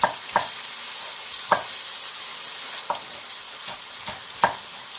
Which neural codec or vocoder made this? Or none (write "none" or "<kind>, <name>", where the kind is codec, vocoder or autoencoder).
none